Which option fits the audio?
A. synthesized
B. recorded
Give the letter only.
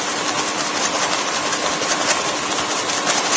B